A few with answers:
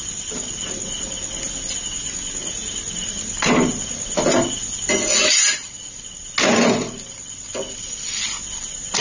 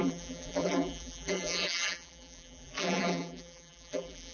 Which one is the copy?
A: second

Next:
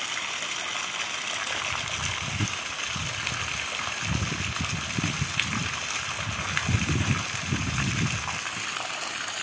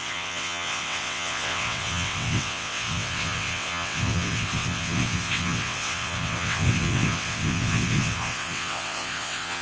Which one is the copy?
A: second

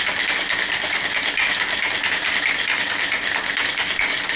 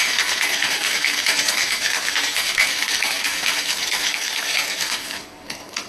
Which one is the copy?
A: second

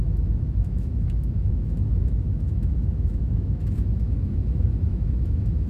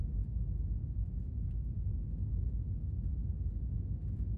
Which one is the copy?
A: first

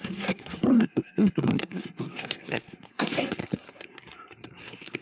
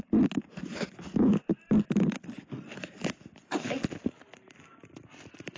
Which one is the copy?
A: first